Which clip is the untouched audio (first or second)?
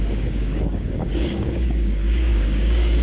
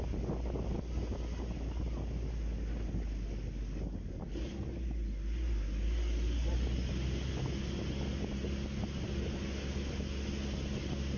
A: second